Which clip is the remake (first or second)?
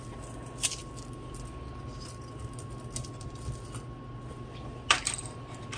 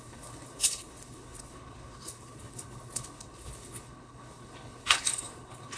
second